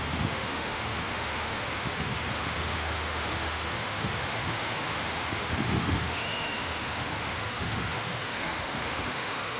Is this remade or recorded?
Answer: remade